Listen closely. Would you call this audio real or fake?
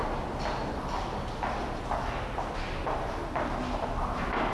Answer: real